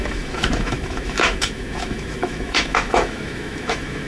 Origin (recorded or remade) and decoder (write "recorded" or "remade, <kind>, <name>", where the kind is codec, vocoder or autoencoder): remade, autoencoder, DAC-VAE